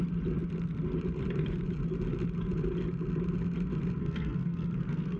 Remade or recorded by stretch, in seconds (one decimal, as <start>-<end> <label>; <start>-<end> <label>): 0.0-4.0 recorded; 4.0-5.2 remade